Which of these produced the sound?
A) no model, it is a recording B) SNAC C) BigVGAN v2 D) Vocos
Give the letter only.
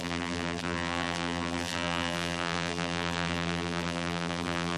C